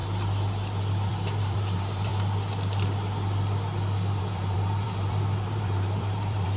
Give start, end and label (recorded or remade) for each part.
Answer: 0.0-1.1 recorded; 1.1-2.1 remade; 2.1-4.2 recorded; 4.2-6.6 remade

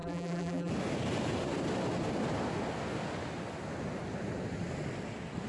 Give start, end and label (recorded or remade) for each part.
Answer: 0.0-0.7 remade; 0.7-5.5 recorded

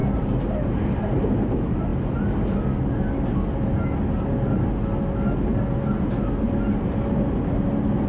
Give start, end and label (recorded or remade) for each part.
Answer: 0.0-8.1 recorded

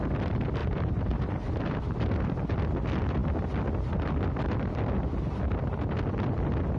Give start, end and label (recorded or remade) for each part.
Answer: 0.0-0.6 recorded; 0.6-1.8 remade; 1.8-6.8 recorded